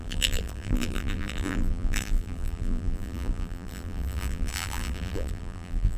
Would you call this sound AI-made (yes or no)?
yes